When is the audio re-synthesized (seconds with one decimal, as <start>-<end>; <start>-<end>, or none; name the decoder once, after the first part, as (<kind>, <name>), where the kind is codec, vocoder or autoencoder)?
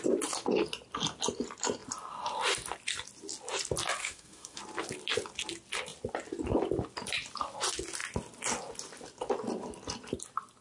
4.0-4.6 (autoencoder, DAC-VAE)